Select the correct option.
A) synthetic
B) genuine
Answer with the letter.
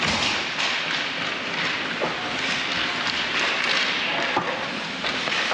B